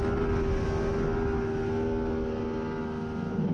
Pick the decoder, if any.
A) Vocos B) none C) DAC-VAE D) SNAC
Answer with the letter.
B